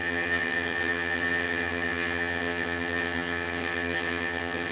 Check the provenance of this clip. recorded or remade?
remade